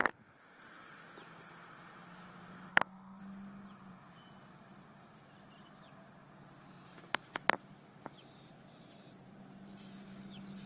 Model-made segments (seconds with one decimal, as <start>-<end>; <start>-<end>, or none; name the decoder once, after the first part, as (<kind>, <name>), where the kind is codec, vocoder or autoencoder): 2.7-3.2 (codec, SNAC)